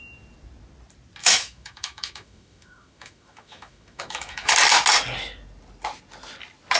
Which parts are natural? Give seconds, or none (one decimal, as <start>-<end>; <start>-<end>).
0.0-1.2; 4.5-6.8